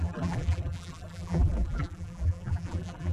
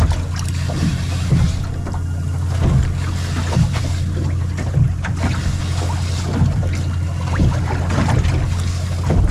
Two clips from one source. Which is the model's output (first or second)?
first